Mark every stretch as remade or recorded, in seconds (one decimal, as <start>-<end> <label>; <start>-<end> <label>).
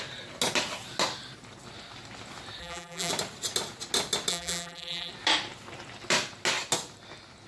0.0-2.6 recorded; 2.6-3.1 remade; 3.1-4.3 recorded; 4.3-5.1 remade; 5.1-7.5 recorded